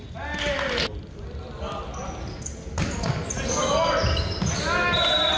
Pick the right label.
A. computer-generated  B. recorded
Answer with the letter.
B